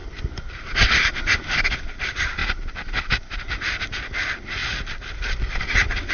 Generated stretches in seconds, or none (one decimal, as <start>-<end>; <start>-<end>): none